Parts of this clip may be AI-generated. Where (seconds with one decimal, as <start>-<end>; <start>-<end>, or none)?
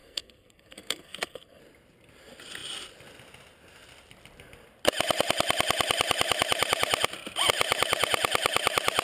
0.0-1.6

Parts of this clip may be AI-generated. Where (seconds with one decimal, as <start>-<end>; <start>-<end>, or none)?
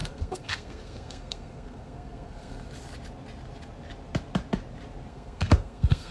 0.0-2.7; 5.1-6.1